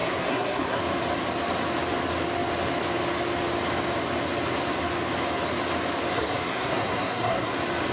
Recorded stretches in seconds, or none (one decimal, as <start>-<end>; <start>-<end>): 0.8-6.1; 7.5-7.9